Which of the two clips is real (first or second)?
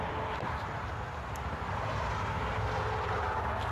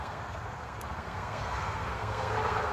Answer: first